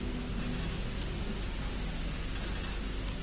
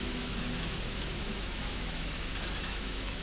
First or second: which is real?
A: first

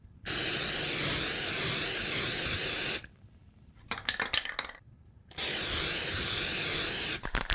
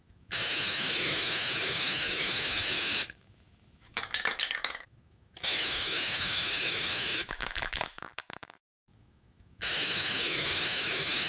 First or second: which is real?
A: first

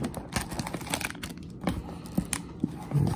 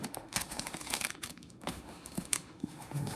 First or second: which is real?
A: first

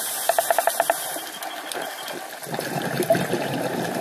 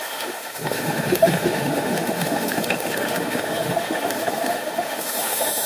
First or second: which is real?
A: first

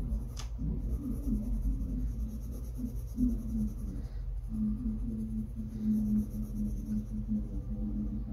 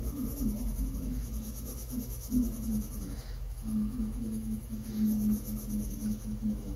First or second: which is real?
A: first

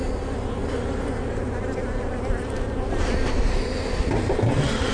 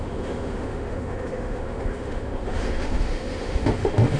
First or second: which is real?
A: first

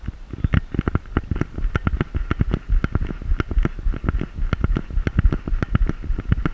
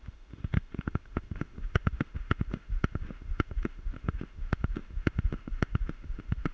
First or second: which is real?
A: first